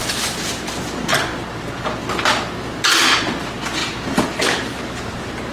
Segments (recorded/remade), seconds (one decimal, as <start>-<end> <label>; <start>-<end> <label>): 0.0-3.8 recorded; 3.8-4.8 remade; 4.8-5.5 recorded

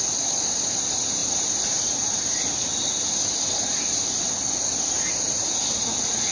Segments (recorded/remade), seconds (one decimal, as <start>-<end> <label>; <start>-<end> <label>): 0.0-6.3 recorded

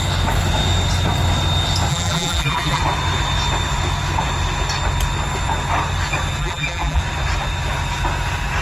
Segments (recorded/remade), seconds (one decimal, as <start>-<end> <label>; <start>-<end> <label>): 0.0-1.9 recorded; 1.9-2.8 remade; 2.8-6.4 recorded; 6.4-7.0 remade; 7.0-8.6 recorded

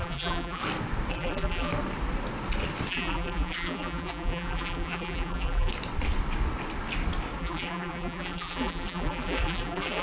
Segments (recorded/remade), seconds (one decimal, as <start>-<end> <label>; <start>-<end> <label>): 0.0-0.6 remade; 0.6-1.1 recorded; 1.1-1.7 remade; 1.7-2.9 recorded; 2.9-5.7 remade; 5.7-7.4 recorded; 7.4-10.0 remade

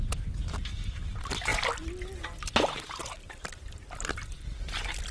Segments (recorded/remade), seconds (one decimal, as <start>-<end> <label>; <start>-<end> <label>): 0.0-1.5 recorded; 1.5-4.6 remade; 4.6-5.1 recorded

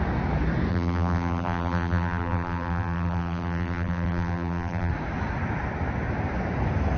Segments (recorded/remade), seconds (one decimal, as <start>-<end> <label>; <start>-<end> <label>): 0.0-0.7 recorded; 0.7-4.9 remade; 4.9-7.0 recorded

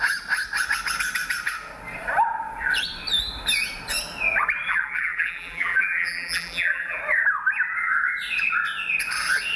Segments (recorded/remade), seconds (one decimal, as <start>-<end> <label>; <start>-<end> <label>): 0.0-4.7 recorded; 4.7-7.0 remade; 7.0-9.6 recorded